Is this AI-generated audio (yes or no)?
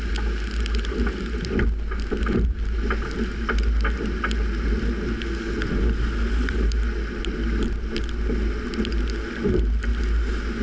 no